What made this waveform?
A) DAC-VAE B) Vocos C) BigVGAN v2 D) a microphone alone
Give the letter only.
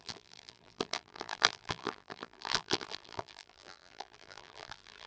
C